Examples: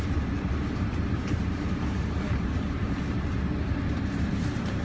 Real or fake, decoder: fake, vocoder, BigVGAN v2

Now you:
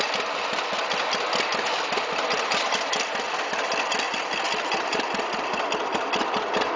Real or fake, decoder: real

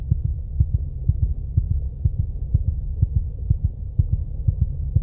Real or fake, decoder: fake, vocoder, BigVGAN v2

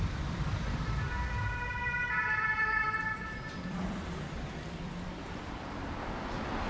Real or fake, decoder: fake, vocoder, BigVGAN v2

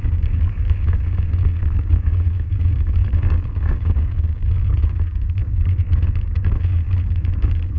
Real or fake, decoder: fake, codec, DAC